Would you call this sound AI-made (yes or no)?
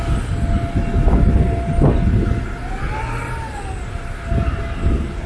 no